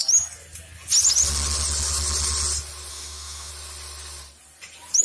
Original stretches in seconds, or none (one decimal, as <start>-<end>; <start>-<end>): 0.0-2.9; 3.5-5.0